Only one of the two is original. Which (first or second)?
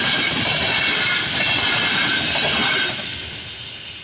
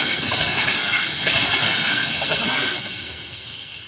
first